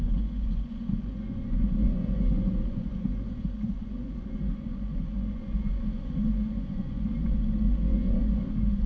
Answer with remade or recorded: remade